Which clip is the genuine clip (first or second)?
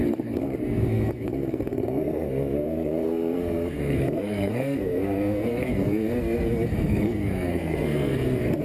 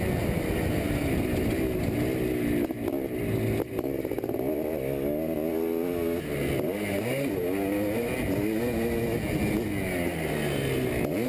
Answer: second